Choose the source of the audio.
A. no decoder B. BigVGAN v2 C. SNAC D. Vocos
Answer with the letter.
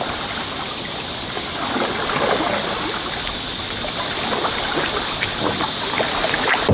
A